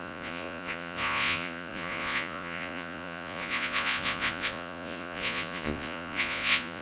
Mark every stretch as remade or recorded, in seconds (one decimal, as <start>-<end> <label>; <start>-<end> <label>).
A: 0.0-6.8 remade